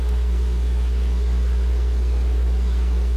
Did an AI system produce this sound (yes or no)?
yes